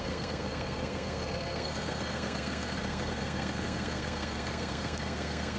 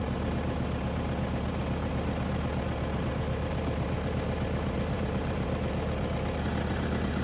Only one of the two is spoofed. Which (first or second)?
first